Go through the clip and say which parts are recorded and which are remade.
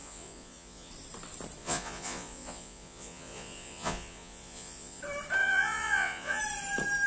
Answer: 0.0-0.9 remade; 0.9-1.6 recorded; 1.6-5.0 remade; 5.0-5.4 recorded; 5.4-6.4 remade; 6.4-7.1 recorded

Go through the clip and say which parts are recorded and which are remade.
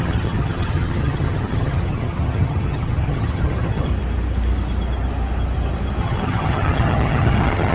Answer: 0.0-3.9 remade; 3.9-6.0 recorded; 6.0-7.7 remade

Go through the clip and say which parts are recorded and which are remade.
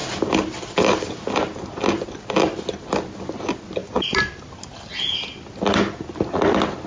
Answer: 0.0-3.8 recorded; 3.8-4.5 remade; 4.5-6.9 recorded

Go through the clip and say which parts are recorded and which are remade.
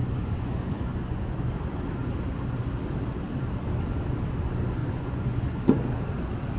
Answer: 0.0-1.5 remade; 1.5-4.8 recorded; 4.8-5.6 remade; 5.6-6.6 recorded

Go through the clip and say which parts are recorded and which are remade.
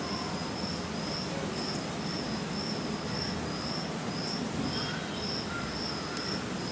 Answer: 0.0-6.7 recorded